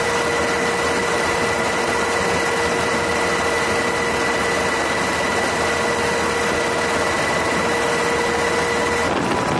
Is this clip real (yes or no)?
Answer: yes